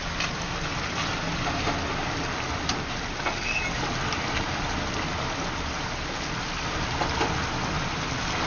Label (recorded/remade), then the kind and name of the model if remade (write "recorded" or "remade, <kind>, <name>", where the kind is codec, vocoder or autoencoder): recorded